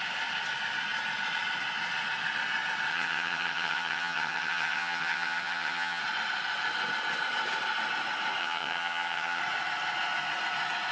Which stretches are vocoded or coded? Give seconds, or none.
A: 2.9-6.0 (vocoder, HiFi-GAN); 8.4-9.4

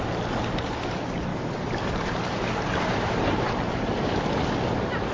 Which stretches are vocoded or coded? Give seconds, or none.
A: 1.3-4.4 (vocoder, BigVGAN v2)

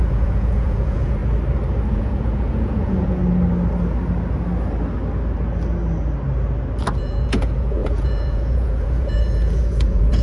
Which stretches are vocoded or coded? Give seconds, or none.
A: 0.0-1.2 (vocoder, Vocos); 1.9-3.2; 7.0-10.2